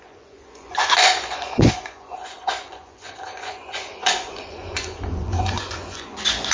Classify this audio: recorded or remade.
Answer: remade